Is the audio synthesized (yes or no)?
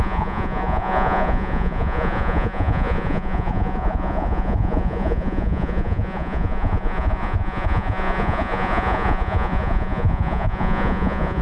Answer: yes